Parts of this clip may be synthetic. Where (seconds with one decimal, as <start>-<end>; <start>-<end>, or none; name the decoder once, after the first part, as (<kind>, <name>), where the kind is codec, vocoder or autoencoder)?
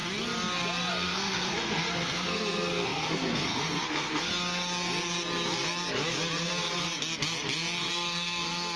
0.9-4.3 (codec, SNAC); 7.9-8.8